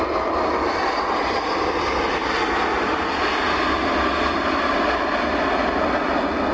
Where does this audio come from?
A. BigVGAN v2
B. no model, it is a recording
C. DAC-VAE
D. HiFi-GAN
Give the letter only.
B